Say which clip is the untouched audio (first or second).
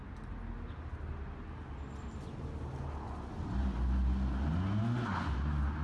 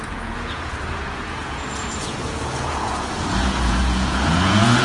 first